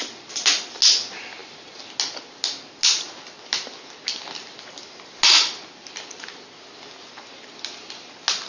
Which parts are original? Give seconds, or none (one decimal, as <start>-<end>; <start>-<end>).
0.0-8.5